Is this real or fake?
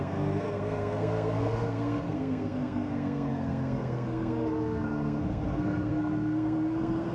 fake